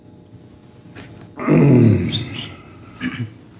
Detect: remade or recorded recorded